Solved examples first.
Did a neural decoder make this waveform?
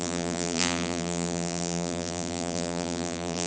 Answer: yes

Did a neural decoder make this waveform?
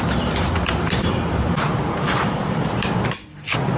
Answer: no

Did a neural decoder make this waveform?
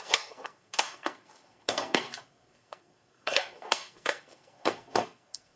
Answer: yes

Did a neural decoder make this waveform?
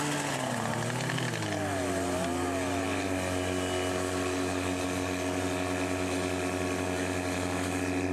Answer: no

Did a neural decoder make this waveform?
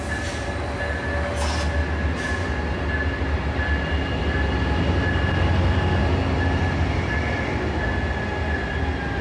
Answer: no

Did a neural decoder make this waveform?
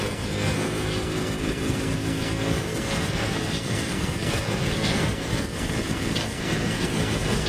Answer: yes